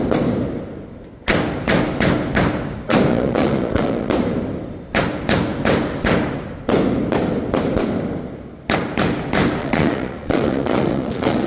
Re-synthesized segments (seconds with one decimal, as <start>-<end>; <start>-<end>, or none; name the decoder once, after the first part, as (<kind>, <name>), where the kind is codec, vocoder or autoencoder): 3.1-4.1 (vocoder, Vocos); 9.6-11.5